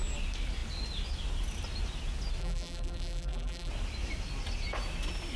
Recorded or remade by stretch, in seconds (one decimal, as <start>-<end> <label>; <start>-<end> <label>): 0.0-2.4 recorded; 2.4-3.7 remade; 3.7-5.4 recorded